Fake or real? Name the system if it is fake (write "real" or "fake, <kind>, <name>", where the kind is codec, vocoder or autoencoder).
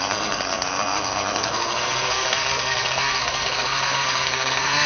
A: fake, codec, SNAC